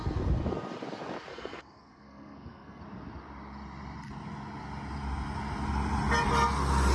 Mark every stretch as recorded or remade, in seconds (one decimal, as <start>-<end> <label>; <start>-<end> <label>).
0.0-1.3 recorded; 1.3-2.8 remade; 2.8-6.9 recorded

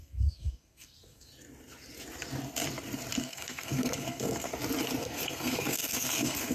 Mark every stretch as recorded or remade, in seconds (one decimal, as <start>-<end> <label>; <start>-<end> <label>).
0.0-1.3 remade; 1.3-3.2 recorded; 3.2-4.5 remade; 4.5-5.0 recorded; 5.0-6.5 remade